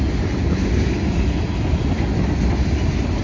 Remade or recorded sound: recorded